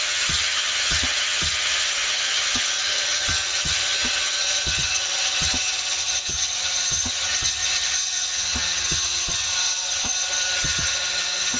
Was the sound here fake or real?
fake